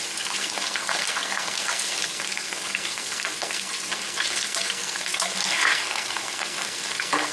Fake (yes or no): yes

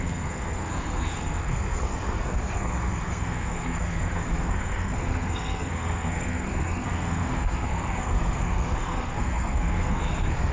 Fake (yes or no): yes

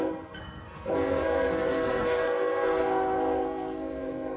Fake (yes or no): yes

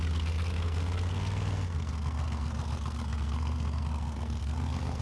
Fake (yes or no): yes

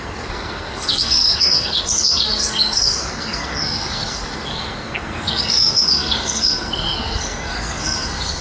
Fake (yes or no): yes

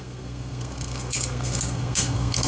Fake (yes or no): yes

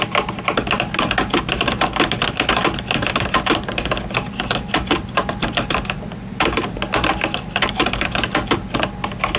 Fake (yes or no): no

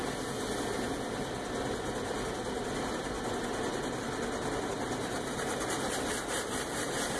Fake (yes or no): no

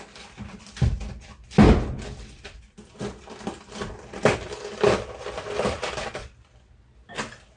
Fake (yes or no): no